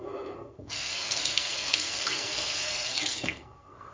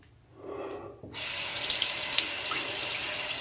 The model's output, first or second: first